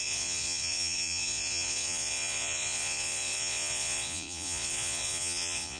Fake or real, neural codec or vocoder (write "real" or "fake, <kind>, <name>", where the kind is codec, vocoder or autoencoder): fake, vocoder, Vocos